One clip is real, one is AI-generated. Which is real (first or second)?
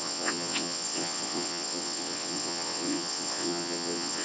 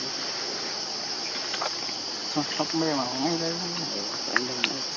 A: second